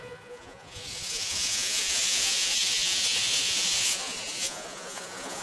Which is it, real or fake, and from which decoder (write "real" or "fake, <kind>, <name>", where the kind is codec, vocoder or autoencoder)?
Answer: fake, vocoder, Vocos